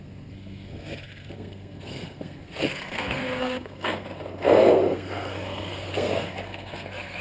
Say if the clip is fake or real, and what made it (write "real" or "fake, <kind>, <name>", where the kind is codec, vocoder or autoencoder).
fake, codec, SNAC